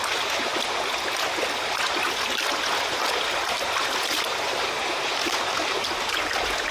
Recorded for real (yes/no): yes